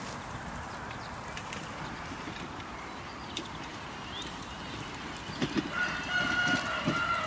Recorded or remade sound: recorded